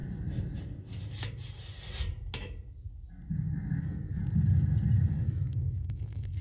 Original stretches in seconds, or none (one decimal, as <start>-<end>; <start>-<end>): 0.0-3.8; 4.2-5.1